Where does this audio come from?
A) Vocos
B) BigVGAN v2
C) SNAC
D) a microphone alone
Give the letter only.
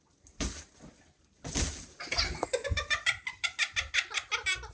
D